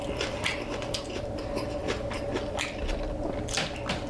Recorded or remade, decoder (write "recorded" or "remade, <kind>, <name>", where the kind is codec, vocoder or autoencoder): recorded